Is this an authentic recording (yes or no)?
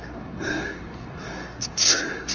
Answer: no